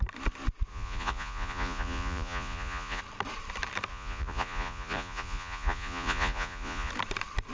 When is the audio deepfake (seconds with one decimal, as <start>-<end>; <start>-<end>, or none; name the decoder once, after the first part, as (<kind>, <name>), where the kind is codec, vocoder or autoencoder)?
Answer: 0.7-3.0 (vocoder, Vocos); 3.9-6.9